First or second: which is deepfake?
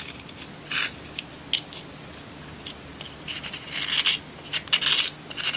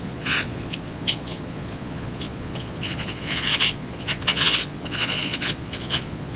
second